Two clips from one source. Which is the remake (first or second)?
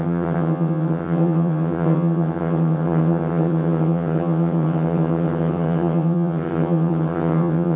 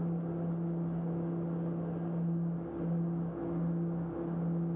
first